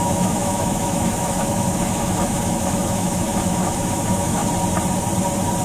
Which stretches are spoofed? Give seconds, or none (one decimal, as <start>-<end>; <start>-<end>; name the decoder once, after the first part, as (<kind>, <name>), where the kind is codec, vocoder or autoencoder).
0.0-4.4 (autoencoder, DAC-VAE)